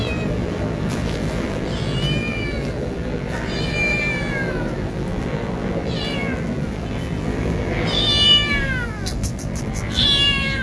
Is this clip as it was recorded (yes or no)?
no